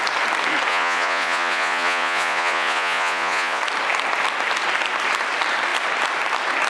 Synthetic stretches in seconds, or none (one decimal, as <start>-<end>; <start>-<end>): 0.7-3.6